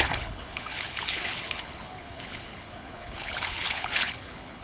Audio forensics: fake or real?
fake